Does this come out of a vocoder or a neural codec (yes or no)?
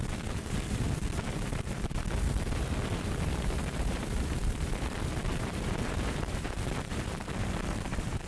yes